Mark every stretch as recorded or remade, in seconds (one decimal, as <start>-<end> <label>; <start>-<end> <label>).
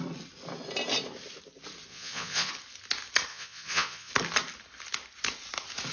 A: 0.0-1.9 recorded; 1.9-2.5 remade; 2.5-3.3 recorded; 3.3-4.1 remade; 4.1-5.9 recorded